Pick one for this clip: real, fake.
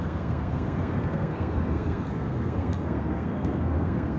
fake